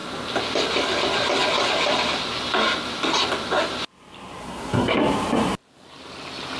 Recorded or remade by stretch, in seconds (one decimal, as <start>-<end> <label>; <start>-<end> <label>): 0.0-4.4 recorded; 4.4-5.0 remade; 5.0-6.6 recorded